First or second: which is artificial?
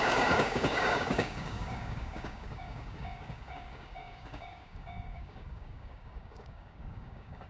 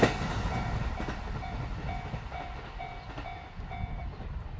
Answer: first